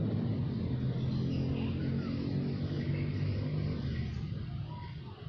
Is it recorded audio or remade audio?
recorded